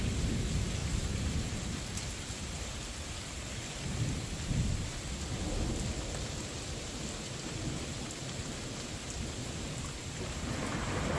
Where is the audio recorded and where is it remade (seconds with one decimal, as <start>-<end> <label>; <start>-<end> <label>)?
0.0-0.8 recorded; 0.8-1.8 remade; 1.8-11.2 recorded